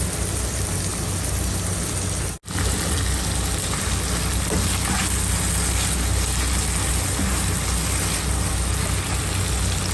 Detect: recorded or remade recorded